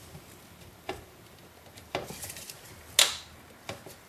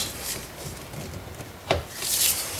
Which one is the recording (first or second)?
first